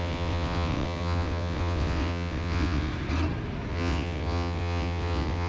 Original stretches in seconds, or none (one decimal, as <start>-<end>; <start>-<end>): 2.9-3.7